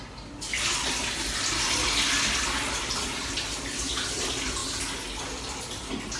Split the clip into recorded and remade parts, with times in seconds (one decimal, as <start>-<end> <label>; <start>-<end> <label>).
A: 0.0-6.2 recorded